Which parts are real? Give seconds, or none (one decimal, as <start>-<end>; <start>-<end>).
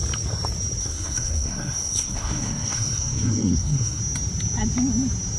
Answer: 0.0-0.8; 4.0-5.4